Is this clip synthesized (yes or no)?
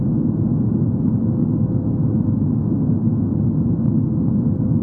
no